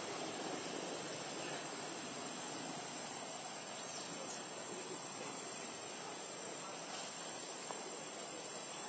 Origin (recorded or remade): recorded